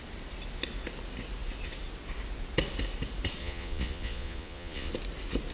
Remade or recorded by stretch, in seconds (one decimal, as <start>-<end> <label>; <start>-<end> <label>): 0.0-3.4 recorded; 3.4-4.9 remade; 4.9-5.5 recorded